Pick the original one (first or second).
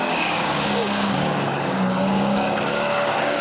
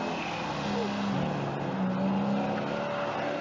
second